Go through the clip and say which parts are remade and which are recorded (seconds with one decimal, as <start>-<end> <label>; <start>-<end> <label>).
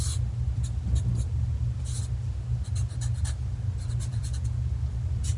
0.0-4.1 recorded; 4.1-4.7 remade; 4.7-5.4 recorded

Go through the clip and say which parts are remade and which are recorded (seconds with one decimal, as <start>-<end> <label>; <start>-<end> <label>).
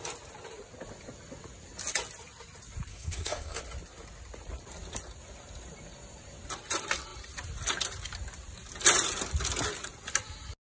0.0-2.9 recorded; 2.9-3.6 remade; 3.6-10.7 recorded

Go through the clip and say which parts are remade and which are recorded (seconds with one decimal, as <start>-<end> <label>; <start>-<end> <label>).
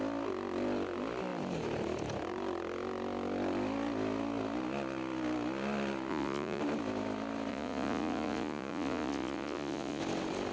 0.0-6.1 recorded; 6.1-6.6 remade; 6.6-7.5 recorded; 7.5-10.0 remade; 10.0-10.5 recorded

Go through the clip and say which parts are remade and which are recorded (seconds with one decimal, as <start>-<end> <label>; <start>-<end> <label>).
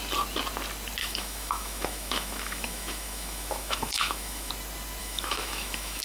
0.0-1.0 recorded; 1.0-4.5 remade; 4.5-5.0 recorded; 5.0-6.0 remade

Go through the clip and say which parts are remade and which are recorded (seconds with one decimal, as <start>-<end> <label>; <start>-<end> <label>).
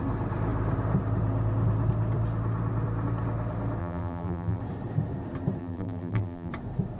0.0-3.8 recorded; 3.8-4.6 remade; 4.6-5.6 recorded; 5.6-6.5 remade; 6.5-7.0 recorded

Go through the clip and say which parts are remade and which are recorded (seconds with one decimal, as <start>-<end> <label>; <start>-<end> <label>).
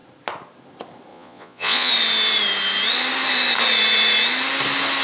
0.0-1.1 recorded; 1.1-1.9 remade; 1.9-5.0 recorded